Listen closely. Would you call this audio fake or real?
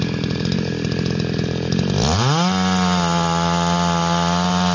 real